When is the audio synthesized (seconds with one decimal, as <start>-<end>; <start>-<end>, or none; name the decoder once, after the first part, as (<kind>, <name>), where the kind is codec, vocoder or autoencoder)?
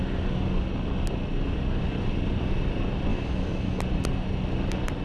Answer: 3.1-3.8 (autoencoder, DAC-VAE)